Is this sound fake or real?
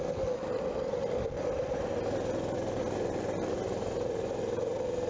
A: real